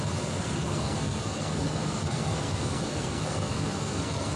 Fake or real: fake